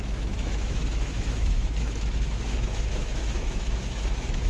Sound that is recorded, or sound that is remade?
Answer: remade